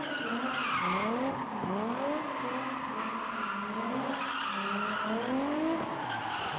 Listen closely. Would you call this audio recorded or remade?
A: recorded